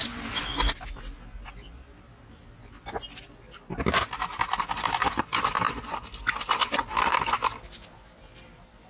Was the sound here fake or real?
real